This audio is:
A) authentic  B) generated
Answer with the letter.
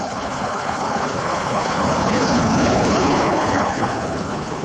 B